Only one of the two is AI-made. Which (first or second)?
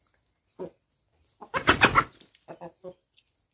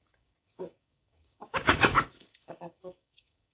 second